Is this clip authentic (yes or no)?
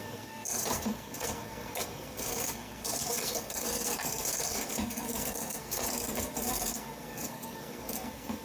no